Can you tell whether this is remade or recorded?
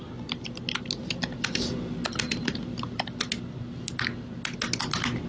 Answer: recorded